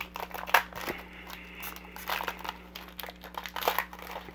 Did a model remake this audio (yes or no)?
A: no